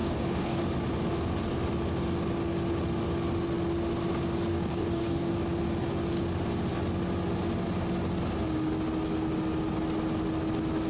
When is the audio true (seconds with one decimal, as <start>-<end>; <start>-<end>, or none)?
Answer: 0.6-4.5; 5.3-10.9